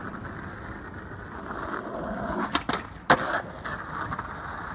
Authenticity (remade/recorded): recorded